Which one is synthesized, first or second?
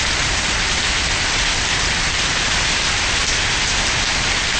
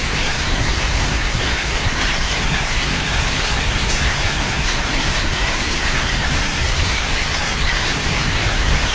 second